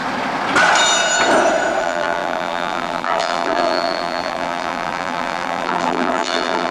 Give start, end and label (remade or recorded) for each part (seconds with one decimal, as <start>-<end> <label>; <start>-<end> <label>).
0.0-1.8 recorded; 1.8-6.7 remade